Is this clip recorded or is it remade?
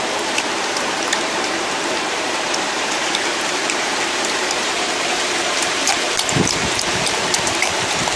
remade